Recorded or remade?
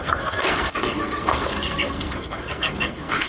remade